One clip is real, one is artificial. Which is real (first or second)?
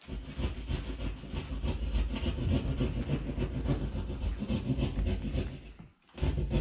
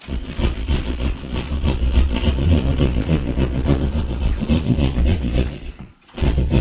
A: first